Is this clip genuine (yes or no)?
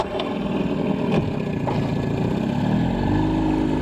yes